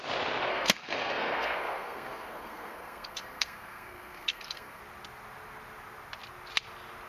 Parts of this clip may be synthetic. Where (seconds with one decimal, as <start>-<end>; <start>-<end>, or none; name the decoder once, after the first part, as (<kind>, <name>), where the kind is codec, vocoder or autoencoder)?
0.5-4.8 (codec, SNAC)